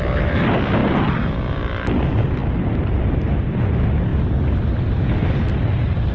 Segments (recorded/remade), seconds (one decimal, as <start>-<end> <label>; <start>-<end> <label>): 0.0-6.1 recorded